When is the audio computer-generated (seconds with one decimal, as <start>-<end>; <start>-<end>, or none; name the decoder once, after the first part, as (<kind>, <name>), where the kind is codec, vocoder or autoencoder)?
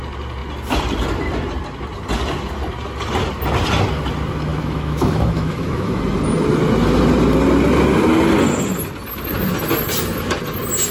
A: 4.5-6.0 (autoencoder, DAC-VAE)